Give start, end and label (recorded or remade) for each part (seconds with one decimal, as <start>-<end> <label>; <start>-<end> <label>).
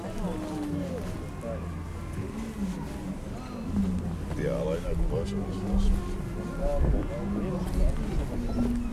0.0-8.9 recorded